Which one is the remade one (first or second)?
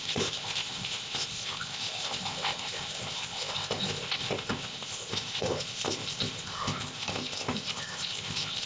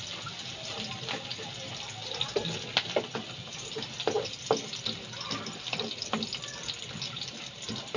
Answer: first